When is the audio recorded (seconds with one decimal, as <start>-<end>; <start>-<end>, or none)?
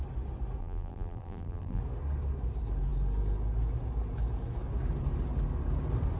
0.0-0.6; 1.8-6.2